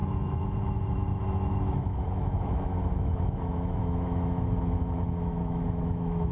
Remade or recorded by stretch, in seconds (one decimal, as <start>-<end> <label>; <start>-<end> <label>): 0.0-6.3 remade